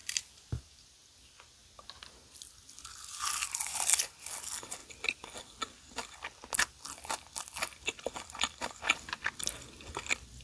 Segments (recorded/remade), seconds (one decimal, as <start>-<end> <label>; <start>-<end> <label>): 0.0-0.9 remade; 0.9-1.6 recorded; 1.6-2.6 remade; 2.6-10.4 recorded